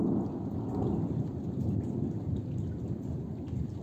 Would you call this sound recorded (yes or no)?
yes